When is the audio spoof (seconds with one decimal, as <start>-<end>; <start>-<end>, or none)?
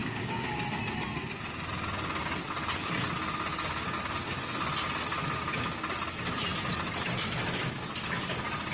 0.0-0.7